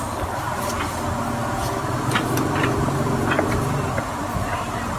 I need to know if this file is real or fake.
real